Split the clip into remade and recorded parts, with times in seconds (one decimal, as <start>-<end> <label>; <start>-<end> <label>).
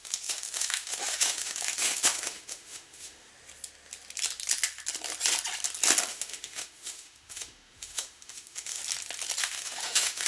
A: 0.0-3.3 remade; 3.3-6.1 recorded; 6.1-8.8 remade; 8.8-9.4 recorded; 9.4-10.3 remade